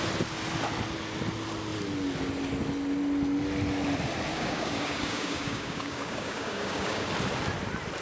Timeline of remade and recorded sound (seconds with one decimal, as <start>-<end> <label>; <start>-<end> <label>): 0.0-4.3 recorded; 4.3-7.1 remade; 7.1-8.0 recorded